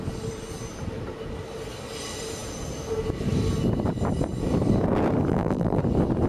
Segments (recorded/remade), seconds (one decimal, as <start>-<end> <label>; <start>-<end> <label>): 0.0-5.3 recorded; 5.3-5.8 remade; 5.8-6.3 recorded